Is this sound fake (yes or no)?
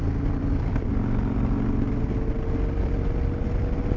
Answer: no